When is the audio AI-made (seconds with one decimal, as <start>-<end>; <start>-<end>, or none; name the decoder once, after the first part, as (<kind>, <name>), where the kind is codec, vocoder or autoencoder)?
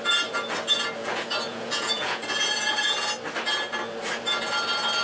1.0-2.9 (vocoder, Vocos)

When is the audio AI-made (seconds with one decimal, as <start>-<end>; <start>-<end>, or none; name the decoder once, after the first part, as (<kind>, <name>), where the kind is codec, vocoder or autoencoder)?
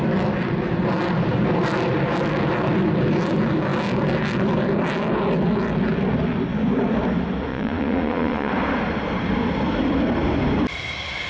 7.5-8.5 (vocoder, Vocos)